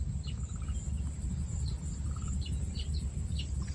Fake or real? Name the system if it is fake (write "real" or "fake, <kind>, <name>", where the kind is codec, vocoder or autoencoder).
real